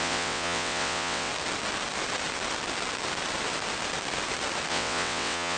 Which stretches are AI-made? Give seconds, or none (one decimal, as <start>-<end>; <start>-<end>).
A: 0.0-1.3; 4.7-5.6

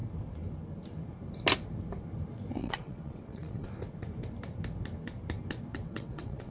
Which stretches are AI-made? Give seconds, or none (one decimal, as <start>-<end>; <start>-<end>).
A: 2.6-3.7; 5.7-6.5

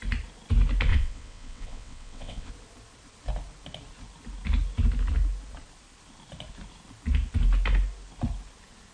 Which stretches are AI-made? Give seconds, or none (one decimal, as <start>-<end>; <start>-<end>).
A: 0.9-2.5

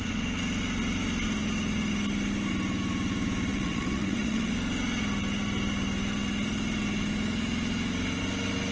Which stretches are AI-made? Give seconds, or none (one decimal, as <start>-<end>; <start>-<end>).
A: 3.5-4.5

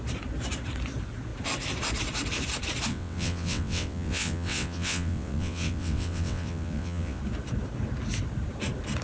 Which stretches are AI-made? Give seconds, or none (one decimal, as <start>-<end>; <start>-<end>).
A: 2.9-7.2

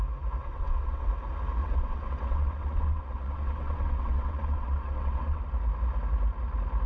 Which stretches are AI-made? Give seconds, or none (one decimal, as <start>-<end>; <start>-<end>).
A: 0.4-1.1; 1.6-5.4